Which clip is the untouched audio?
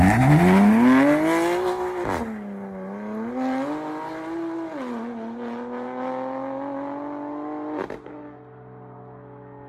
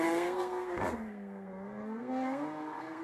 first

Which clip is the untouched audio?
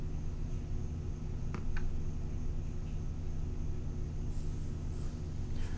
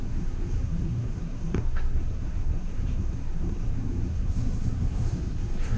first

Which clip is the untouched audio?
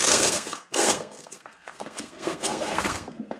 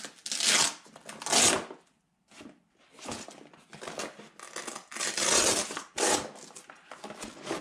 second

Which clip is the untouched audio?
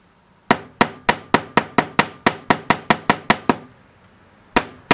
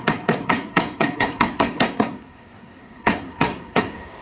first